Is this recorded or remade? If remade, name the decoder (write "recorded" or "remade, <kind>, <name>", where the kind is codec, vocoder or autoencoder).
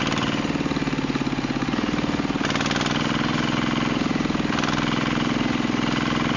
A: recorded